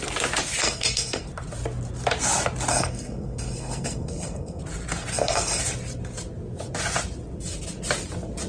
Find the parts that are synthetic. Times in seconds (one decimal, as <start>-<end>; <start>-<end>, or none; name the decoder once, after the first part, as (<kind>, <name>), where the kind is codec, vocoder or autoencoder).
0.6-1.3 (codec, SNAC); 2.7-4.6; 5.1-5.6